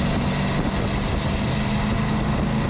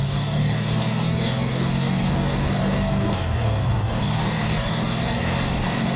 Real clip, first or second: first